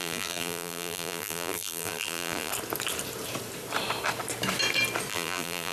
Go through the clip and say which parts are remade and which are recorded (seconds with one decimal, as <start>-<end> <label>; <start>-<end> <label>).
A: 0.0-2.5 remade; 2.5-5.1 recorded; 5.1-5.7 remade